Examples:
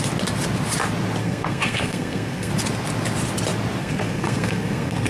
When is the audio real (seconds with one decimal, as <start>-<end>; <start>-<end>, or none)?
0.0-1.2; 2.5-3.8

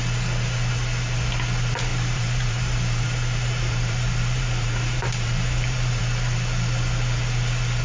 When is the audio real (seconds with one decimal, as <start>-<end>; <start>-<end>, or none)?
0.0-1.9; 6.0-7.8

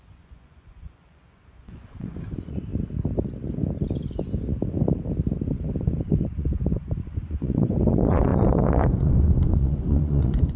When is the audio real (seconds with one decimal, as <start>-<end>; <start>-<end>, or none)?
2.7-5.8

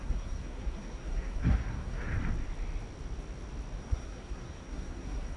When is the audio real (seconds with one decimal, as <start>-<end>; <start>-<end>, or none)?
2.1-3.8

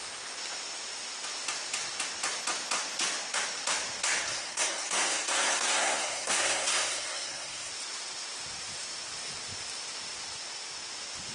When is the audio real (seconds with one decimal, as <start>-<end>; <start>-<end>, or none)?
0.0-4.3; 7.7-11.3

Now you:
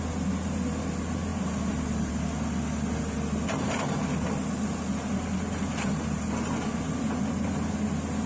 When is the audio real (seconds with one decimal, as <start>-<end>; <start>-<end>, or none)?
0.0-8.3

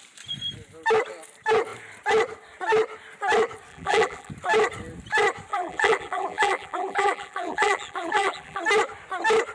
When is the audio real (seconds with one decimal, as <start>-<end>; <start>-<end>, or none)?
0.0-3.7; 4.3-5.5; 8.6-9.5